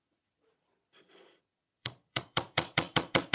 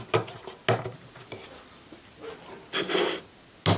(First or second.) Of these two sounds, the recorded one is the second